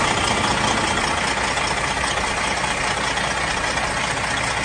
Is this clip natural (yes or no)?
yes